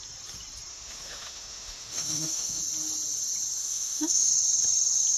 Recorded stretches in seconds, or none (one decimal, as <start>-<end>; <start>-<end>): 0.0-0.7; 2.6-3.6; 4.3-5.2

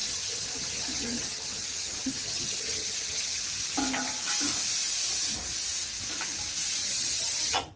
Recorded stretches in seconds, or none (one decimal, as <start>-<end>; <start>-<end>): 3.4-6.8

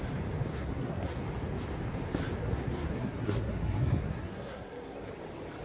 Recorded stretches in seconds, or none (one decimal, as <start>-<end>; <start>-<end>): 0.0-0.5; 1.2-2.4; 5.1-5.6

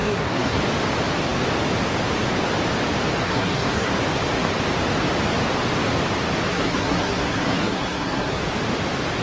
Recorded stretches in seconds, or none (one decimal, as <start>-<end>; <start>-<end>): 0.6-3.2; 3.9-6.5; 8.4-9.2

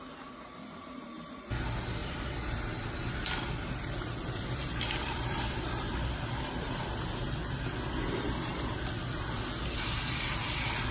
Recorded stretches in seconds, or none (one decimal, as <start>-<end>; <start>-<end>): 0.0-2.0; 6.7-8.5; 9.5-10.9

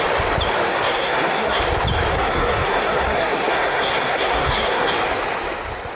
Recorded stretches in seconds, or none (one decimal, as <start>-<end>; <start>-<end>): 0.0-0.7; 1.6-2.1; 4.9-6.0

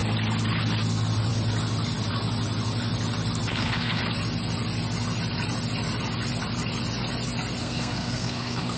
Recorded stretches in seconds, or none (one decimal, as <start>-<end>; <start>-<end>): 0.0-3.5; 4.0-7.6